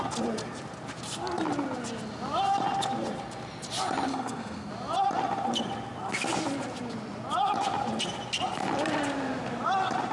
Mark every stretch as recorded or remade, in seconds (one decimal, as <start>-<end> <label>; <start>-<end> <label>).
0.0-4.1 recorded; 4.1-4.7 remade; 4.7-10.1 recorded